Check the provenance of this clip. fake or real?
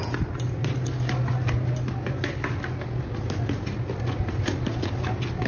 real